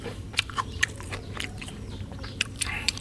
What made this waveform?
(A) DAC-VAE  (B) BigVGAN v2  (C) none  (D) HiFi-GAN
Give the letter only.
B